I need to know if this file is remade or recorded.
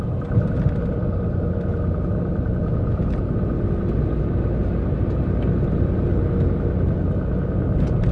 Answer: recorded